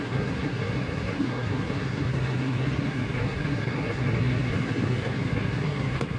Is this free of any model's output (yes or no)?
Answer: no